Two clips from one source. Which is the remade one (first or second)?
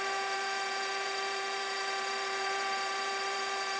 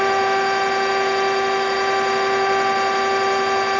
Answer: first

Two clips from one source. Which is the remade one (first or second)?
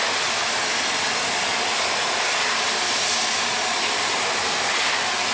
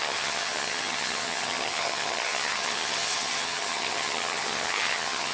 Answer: second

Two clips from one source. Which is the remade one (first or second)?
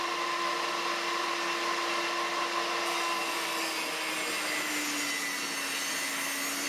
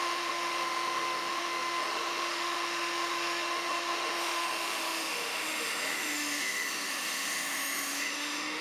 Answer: second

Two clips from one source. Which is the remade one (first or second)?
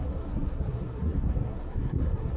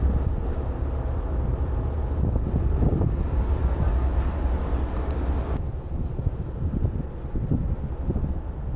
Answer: first